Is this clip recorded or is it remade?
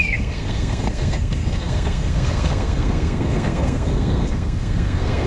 remade